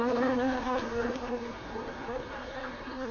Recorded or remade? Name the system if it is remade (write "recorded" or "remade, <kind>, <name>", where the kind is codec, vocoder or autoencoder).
remade, codec, SNAC